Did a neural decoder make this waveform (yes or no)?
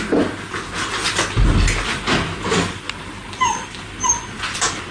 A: no